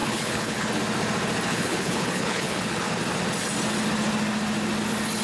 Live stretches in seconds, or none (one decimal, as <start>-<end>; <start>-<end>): 0.7-1.5; 2.9-5.2